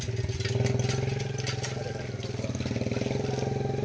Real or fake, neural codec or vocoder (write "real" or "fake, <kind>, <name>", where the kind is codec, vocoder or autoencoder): real